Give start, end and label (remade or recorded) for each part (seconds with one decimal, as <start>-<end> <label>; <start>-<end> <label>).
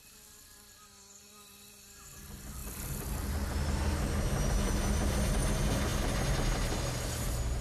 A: 0.0-7.6 recorded